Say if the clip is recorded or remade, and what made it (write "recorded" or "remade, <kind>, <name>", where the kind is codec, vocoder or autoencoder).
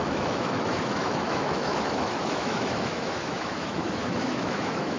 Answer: remade, autoencoder, DAC-VAE